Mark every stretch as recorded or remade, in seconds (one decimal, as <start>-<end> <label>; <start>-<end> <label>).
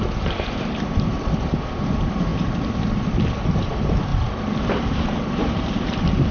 0.0-2.3 remade; 2.3-3.3 recorded; 3.3-4.1 remade; 4.1-4.7 recorded; 4.7-6.3 remade